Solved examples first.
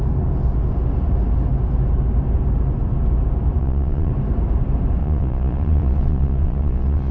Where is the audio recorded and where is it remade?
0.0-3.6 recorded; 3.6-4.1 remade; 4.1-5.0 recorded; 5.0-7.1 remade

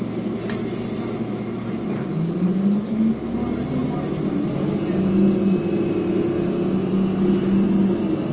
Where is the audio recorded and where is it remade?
0.0-8.3 recorded

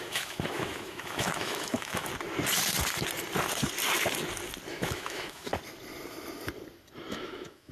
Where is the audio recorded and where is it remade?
0.0-2.1 remade; 2.1-4.7 recorded; 4.7-5.5 remade; 5.5-7.1 recorded; 7.1-7.7 remade

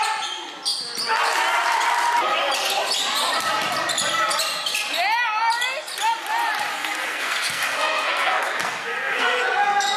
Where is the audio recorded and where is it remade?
0.0-6.7 recorded; 6.7-9.5 remade; 9.5-10.0 recorded

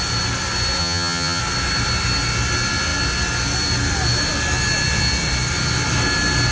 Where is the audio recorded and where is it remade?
0.0-0.8 recorded; 0.8-1.4 remade; 1.4-6.5 recorded